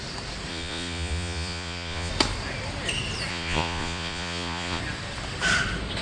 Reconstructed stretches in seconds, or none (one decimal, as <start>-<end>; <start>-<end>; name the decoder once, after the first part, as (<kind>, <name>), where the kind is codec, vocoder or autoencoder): 0.5-2.1 (vocoder, Vocos); 3.3-4.8

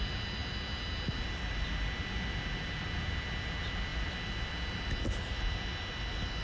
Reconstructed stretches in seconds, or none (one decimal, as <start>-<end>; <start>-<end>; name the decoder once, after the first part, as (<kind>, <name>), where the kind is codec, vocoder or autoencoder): none

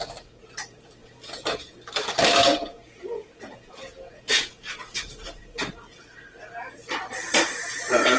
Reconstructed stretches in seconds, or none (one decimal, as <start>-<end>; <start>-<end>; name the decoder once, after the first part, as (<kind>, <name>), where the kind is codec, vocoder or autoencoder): 1.0-1.9 (vocoder, Vocos); 2.5-5.0

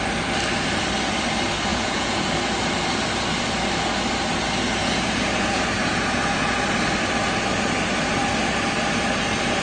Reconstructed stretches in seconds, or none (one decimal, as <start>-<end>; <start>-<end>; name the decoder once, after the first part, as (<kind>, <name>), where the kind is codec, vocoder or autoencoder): 1.7-2.3 (vocoder, Vocos); 4.8-6.6